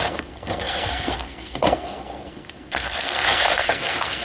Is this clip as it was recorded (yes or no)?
no